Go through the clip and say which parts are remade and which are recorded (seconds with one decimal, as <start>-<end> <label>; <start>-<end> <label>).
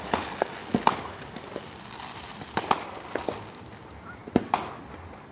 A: 0.0-5.3 recorded